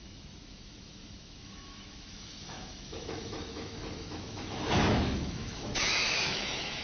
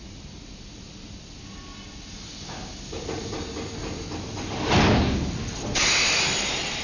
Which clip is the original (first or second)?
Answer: second